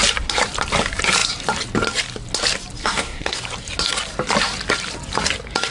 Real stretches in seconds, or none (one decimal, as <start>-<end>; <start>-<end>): 0.0-2.8; 3.4-5.7

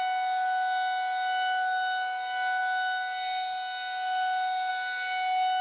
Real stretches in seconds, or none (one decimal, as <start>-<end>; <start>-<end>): 0.0-5.6

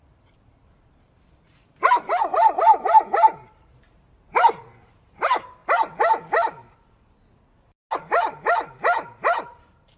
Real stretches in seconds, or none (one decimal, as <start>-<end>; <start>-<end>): 5.6-8.0